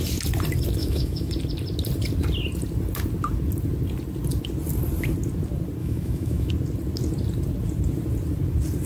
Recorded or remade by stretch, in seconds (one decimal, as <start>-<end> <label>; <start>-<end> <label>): 0.0-0.8 recorded; 0.8-1.3 remade; 1.3-5.8 recorded; 5.8-6.5 remade; 6.5-8.8 recorded